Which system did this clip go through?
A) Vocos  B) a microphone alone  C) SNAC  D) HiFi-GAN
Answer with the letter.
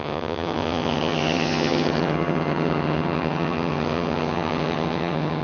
D